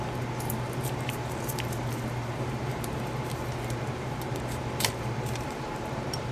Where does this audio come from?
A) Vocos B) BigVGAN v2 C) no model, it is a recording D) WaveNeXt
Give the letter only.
B